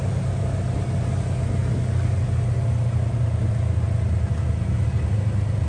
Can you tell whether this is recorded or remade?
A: recorded